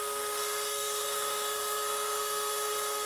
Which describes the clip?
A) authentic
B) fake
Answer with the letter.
B